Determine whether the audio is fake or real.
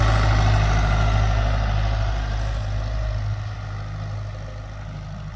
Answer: real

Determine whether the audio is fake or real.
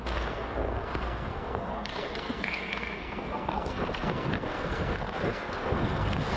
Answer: fake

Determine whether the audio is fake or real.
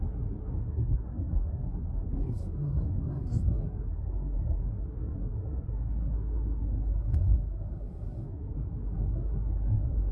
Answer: fake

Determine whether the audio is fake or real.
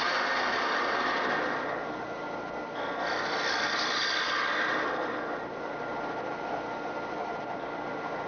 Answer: real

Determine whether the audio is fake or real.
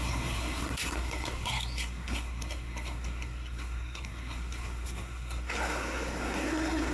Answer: fake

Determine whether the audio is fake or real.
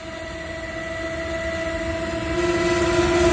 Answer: real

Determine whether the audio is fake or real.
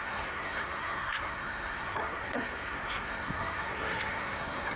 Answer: fake